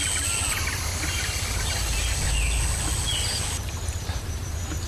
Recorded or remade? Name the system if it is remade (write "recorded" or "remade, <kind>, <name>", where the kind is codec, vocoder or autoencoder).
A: recorded